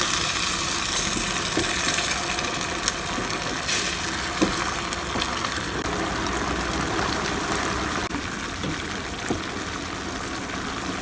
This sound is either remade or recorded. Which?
recorded